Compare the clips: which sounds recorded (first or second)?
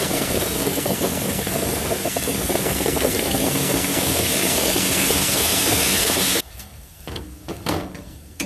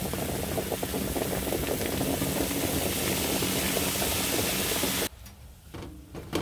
second